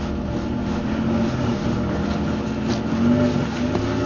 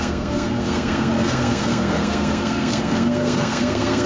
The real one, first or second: first